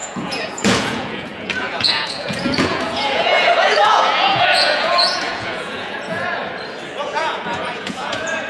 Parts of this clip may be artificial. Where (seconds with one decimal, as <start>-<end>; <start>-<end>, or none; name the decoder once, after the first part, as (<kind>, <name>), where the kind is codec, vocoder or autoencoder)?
0.0-6.4 (vocoder, Vocos); 7.0-8.5